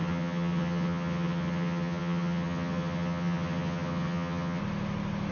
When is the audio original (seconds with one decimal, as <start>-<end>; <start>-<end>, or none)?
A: 4.6-5.3